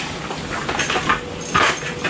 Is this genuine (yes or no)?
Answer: yes